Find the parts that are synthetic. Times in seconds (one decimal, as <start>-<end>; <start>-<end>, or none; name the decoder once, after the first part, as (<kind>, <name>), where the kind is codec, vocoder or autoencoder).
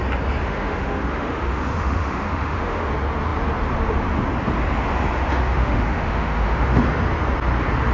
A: 0.4-2.9 (autoencoder, DAC-VAE); 5.3-6.8